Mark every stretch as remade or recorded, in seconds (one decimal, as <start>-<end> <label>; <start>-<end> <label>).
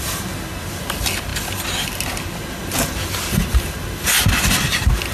0.0-5.1 recorded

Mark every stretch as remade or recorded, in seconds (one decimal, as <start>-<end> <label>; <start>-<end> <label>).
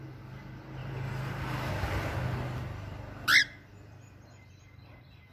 0.0-0.8 recorded; 0.8-1.7 remade; 1.7-3.4 recorded; 3.4-5.3 remade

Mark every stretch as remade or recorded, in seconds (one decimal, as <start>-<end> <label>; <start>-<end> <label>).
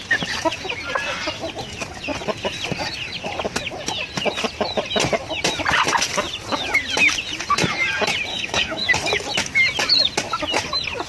0.0-8.3 recorded; 8.3-8.9 remade; 8.9-11.1 recorded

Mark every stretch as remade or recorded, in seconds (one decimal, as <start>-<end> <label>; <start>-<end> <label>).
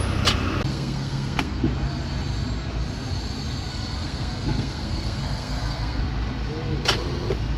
0.0-0.7 recorded; 0.7-1.6 remade; 1.6-3.7 recorded; 3.7-6.0 remade; 6.0-7.6 recorded